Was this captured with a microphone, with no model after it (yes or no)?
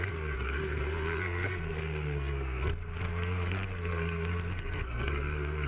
no